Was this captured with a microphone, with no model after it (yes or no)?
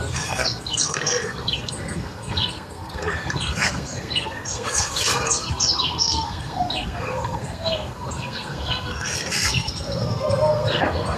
no